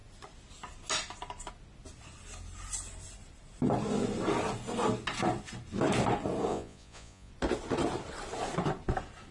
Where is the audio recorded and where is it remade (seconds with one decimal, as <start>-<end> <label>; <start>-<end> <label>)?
0.0-6.5 recorded; 6.5-7.3 remade; 7.3-9.3 recorded